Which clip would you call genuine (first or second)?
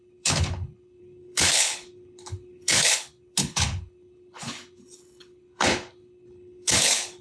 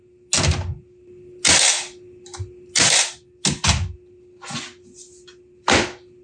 second